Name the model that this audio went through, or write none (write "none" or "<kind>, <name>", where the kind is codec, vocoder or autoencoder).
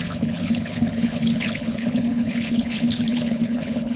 codec, HILCodec